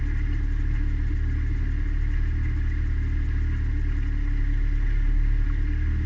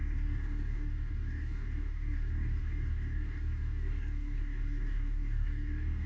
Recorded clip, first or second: first